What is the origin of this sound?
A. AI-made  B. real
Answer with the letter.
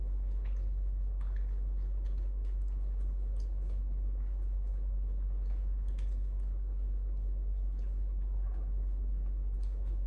A